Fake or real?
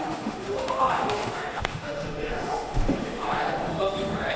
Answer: fake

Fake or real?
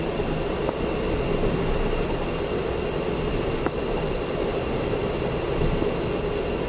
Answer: real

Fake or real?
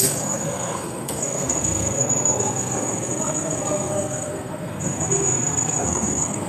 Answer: fake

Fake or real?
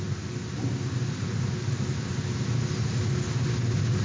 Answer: real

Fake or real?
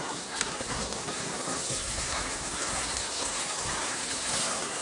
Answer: fake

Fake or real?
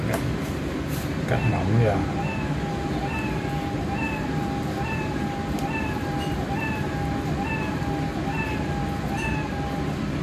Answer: real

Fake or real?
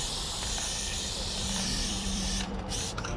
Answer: fake